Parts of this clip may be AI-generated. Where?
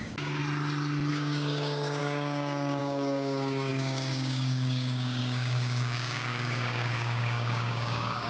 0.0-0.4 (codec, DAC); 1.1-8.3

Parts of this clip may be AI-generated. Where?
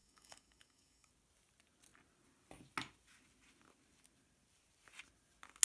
0.0-1.1 (codec, DAC)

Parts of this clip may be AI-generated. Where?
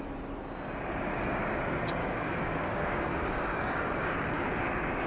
1.1-1.6 (codec, DAC); 2.0-5.1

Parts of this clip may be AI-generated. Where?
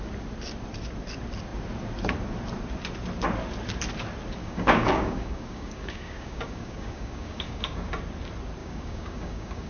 4.4-7.9 (codec, DAC); 8.6-9.7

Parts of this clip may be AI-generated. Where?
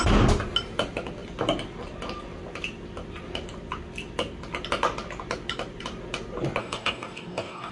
6.6-7.7 (codec, DAC)